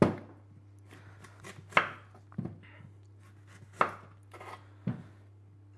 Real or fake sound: real